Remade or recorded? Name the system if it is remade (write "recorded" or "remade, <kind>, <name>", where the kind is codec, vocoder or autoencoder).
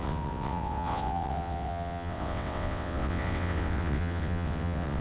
remade, vocoder, WaveNeXt